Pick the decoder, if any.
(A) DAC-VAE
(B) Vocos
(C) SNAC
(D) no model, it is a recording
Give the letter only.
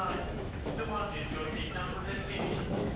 A